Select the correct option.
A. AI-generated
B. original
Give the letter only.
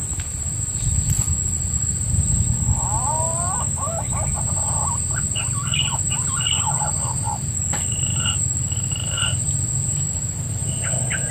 B